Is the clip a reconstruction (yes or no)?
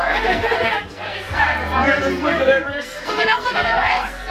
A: yes